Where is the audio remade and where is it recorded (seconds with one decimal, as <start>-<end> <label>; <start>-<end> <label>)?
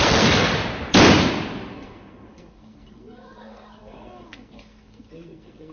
0.0-0.5 remade; 0.5-1.7 recorded; 1.7-5.7 remade